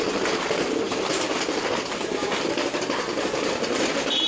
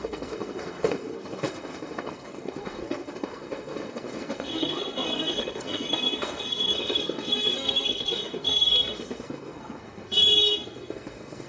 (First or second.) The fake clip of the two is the second